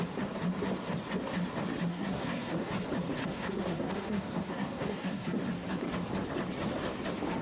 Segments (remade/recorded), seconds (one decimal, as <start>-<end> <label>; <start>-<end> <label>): 0.0-1.9 recorded; 1.9-2.7 remade; 2.7-3.2 recorded; 3.2-5.4 remade; 5.4-7.4 recorded